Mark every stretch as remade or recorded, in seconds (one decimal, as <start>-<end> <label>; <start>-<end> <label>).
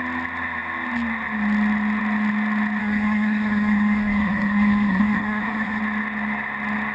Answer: 0.0-2.8 recorded; 2.8-5.8 remade; 5.8-6.9 recorded